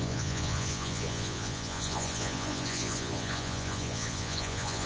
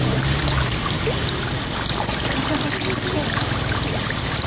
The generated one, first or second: first